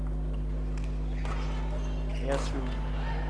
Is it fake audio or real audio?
real